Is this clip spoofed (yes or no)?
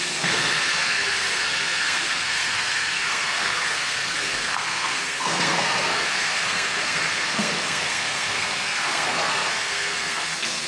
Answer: yes